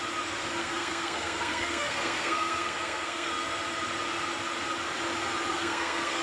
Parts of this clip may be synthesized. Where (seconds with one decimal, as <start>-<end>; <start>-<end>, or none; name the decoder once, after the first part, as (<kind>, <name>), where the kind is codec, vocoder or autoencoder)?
0.6-3.3 (codec, SNAC); 5.5-6.2

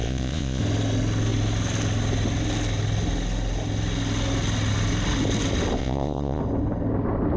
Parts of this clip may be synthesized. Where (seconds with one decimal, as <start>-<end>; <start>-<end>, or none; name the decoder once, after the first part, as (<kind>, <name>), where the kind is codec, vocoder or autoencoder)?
0.0-0.6 (vocoder, Vocos); 5.8-6.4

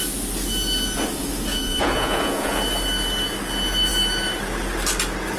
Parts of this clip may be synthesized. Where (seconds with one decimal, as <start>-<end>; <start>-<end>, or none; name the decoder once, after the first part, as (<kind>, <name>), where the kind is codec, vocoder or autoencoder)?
1.5-2.6 (vocoder, Vocos)

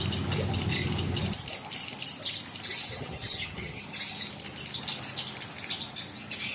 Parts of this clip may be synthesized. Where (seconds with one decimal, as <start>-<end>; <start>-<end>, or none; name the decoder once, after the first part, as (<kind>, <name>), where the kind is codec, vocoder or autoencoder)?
2.9-3.8 (vocoder, HiFi-GAN)

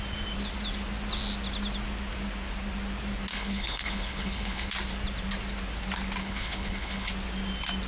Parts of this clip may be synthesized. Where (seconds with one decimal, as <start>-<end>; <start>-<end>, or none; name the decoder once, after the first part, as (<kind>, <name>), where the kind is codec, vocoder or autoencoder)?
3.3-4.7 (codec, HILCodec); 6.2-7.1

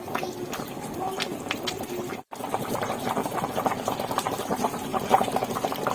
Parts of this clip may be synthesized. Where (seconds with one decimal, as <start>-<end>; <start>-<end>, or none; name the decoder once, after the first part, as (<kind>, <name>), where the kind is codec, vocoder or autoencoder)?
3.2-4.1 (vocoder, BigVGAN v2); 4.9-5.5

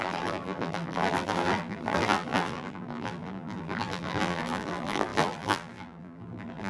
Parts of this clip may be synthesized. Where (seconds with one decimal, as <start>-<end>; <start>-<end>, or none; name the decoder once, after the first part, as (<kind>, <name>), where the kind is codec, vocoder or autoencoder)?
0.0-6.7 (vocoder, BigVGAN v2)

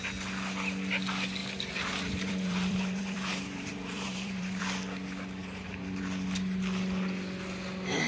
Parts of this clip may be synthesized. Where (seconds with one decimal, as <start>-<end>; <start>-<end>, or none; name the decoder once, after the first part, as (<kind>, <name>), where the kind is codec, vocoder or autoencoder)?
1.4-4.6 (vocoder, BigVGAN v2); 5.4-6.0